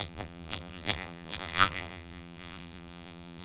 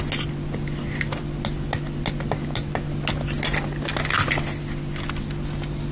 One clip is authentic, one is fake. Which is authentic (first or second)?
second